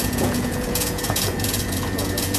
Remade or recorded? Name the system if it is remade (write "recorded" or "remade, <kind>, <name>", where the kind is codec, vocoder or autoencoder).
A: remade, vocoder, Vocos